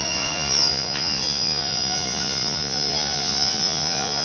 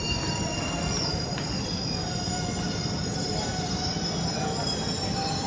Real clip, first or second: second